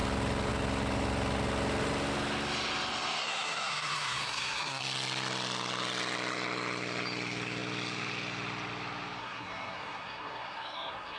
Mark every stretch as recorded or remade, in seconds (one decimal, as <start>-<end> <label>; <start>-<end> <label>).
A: 0.0-3.2 recorded; 3.2-4.8 remade; 4.8-9.2 recorded; 9.2-11.2 remade